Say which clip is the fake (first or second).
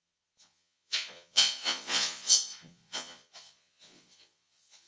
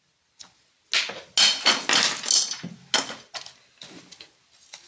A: first